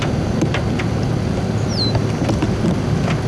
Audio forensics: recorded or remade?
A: recorded